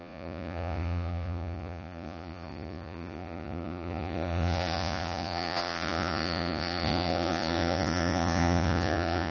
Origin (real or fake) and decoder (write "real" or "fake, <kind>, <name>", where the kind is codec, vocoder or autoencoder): fake, vocoder, Vocos